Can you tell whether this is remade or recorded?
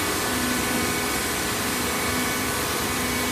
recorded